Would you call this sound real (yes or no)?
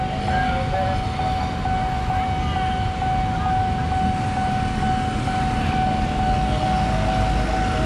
yes